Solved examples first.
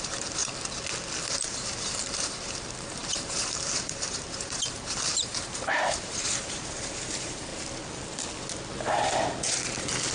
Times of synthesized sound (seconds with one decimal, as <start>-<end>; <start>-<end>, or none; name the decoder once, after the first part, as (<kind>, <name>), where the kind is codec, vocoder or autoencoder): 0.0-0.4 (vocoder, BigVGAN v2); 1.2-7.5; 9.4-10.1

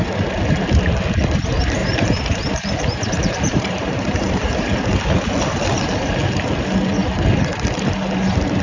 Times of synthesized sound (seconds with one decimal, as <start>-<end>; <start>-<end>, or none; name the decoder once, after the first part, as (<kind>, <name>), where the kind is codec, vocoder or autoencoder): 1.8-4.5 (vocoder, BigVGAN v2)

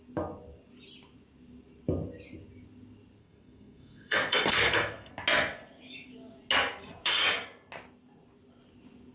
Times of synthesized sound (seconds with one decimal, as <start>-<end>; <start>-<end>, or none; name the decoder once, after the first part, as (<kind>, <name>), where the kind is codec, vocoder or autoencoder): 3.2-5.1 (codec, SNAC)

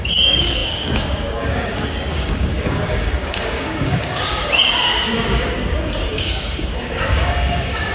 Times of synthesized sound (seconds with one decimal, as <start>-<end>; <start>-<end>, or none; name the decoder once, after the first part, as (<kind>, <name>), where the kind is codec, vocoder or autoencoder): 0.0-7.9 (codec, DAC)

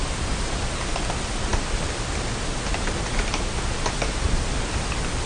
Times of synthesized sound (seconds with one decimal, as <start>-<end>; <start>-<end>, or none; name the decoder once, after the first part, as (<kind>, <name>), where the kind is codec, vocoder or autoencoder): none